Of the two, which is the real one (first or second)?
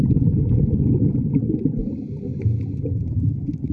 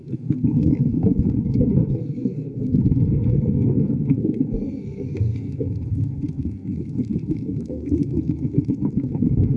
first